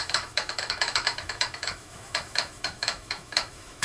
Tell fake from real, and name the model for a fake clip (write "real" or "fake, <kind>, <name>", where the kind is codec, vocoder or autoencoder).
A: fake, autoencoder, DAC-VAE